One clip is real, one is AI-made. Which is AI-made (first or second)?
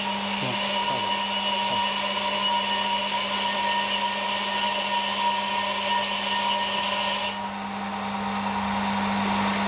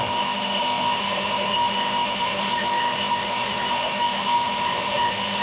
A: second